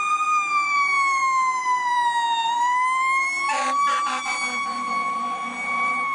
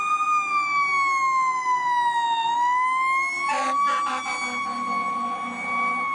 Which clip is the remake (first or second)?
first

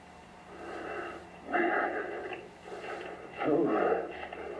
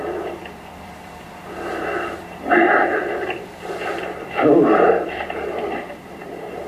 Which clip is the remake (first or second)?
second